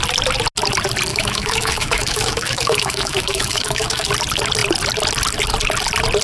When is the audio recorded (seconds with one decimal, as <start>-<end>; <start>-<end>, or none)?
0.0-1.1; 4.1-6.2